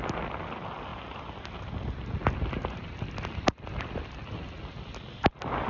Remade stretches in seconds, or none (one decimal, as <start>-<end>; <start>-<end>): none